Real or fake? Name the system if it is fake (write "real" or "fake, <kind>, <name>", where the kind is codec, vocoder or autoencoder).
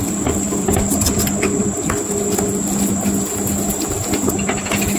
real